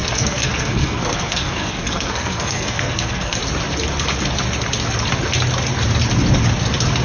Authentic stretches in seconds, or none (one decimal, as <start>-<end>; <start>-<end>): 3.4-7.0